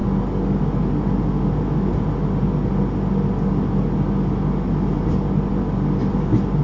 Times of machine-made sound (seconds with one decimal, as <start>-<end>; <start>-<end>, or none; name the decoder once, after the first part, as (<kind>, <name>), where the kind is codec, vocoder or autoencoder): none